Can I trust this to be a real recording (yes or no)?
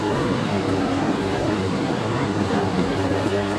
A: no